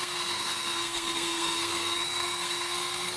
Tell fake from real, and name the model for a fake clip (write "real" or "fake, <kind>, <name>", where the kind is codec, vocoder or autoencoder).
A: fake, codec, SNAC